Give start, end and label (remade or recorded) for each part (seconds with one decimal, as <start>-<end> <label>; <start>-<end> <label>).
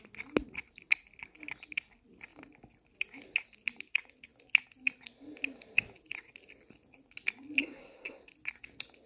0.0-7.6 recorded; 7.6-8.2 remade; 8.2-9.1 recorded